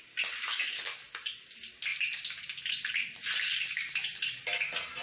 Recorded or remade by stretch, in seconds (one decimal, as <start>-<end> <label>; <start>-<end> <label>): 0.0-5.0 recorded